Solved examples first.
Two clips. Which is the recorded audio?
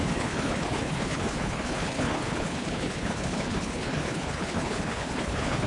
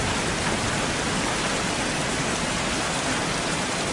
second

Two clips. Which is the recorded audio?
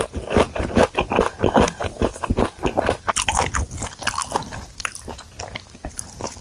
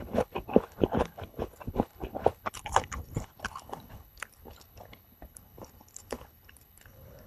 first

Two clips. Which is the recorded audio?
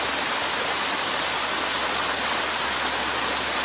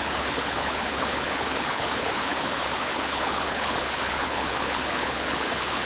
first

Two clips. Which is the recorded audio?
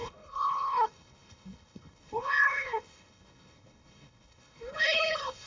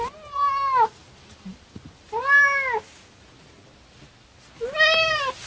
second